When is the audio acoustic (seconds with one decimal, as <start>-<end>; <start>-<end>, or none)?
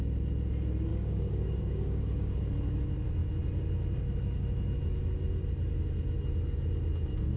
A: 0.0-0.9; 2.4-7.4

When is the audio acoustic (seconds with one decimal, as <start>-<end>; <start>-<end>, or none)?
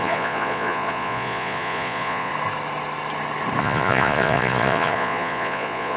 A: 2.3-3.6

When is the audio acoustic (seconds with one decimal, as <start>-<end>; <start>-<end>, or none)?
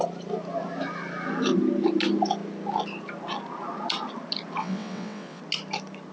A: 0.0-4.6; 5.4-6.1